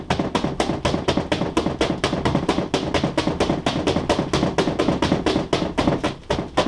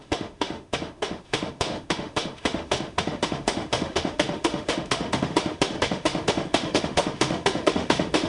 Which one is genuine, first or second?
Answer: first